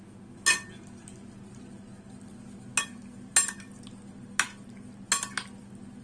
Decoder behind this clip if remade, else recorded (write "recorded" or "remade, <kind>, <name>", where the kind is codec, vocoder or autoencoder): recorded